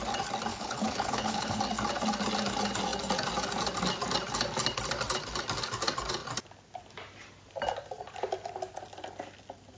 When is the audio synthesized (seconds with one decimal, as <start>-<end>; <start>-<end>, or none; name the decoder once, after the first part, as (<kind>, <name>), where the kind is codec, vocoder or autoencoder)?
0.5-1.6 (codec, HILCodec)